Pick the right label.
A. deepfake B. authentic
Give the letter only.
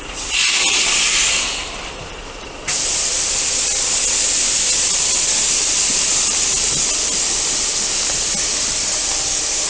A